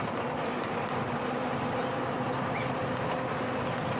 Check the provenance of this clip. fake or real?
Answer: real